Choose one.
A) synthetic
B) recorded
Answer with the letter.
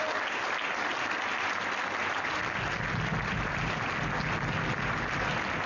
B